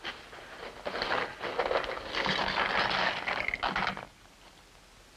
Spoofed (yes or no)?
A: no